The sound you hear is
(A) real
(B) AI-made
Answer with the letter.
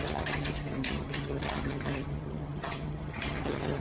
B